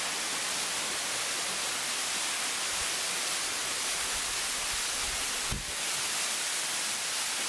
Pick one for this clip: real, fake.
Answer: real